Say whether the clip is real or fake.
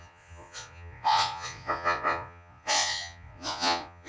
fake